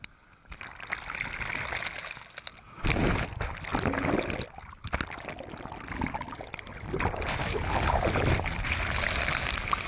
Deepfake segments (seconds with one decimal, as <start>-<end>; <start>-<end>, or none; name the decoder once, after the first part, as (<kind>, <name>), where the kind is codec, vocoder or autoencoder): none